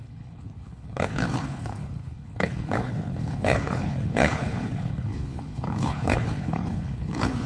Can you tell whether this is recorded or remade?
remade